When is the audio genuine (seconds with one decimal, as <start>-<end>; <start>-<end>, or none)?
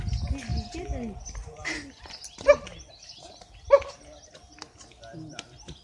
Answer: 0.0-5.8